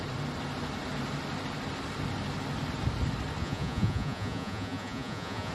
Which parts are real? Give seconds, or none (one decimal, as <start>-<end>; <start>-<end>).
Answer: 0.0-3.4